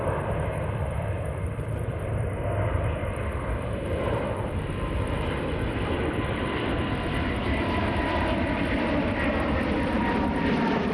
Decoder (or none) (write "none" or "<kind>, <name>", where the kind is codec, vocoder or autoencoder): vocoder, BigVGAN v2